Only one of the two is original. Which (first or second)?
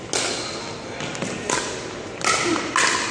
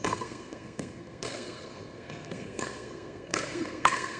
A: first